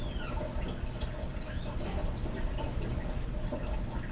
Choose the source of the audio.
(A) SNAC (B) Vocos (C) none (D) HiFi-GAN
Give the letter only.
C